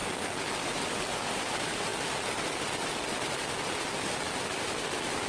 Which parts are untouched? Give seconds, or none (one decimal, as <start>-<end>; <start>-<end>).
0.0-5.3